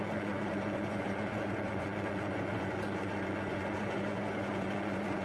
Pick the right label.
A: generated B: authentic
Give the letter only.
A